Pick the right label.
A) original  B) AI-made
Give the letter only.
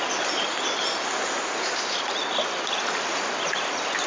A